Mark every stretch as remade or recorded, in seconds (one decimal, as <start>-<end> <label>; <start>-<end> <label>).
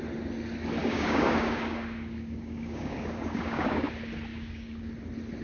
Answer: 0.0-0.8 recorded; 0.8-3.9 remade; 3.9-4.3 recorded; 4.3-4.9 remade; 4.9-5.4 recorded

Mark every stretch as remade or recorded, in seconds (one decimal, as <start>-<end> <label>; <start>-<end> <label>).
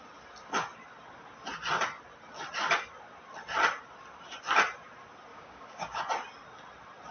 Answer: 0.0-5.3 recorded; 5.3-6.0 remade; 6.0-7.1 recorded